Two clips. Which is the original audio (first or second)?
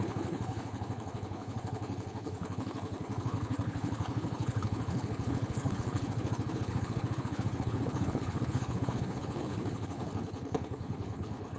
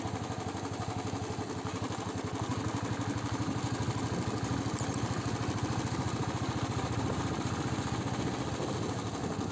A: second